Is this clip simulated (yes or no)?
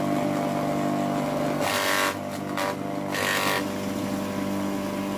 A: no